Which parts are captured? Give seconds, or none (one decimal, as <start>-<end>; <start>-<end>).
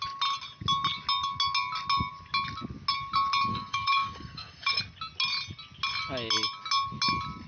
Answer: 0.0-3.5; 4.8-7.5